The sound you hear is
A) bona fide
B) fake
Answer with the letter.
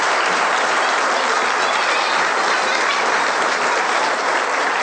A